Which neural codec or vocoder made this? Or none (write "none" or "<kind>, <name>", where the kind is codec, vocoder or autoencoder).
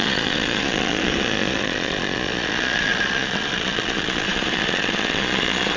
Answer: vocoder, Vocos